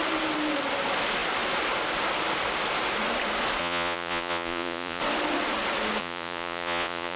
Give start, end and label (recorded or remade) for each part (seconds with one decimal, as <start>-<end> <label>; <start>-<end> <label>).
0.0-3.6 recorded; 3.6-5.0 remade; 5.0-6.0 recorded; 6.0-7.2 remade